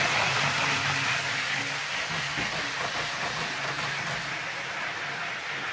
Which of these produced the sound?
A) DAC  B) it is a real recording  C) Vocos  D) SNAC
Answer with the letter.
B